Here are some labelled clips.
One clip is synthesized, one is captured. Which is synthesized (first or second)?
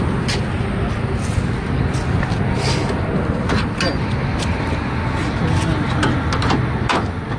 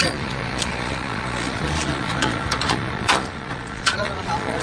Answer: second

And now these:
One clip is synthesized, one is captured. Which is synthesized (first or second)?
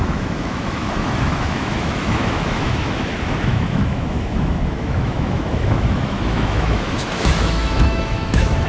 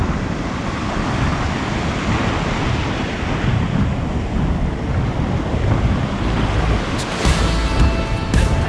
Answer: first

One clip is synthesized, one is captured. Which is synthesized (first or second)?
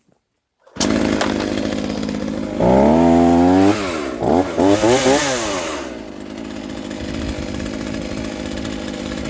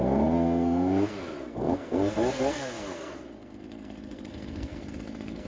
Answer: second